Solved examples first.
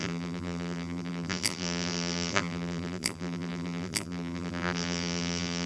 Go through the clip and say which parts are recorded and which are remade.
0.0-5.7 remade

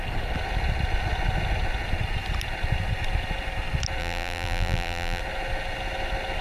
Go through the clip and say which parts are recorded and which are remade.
0.0-4.0 recorded; 4.0-5.2 remade; 5.2-6.4 recorded

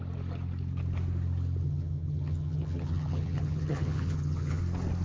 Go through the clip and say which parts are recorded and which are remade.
0.0-1.6 recorded; 1.6-4.6 remade; 4.6-5.0 recorded

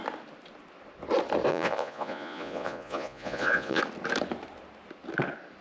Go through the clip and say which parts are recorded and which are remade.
0.0-1.5 recorded; 1.5-3.8 remade; 3.8-5.6 recorded

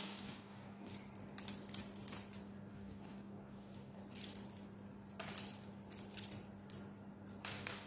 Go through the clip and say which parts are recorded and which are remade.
0.0-0.9 remade; 0.9-2.7 recorded; 2.7-4.0 remade; 4.0-7.4 recorded; 7.4-7.9 remade